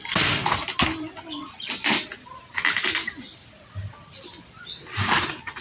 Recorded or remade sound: recorded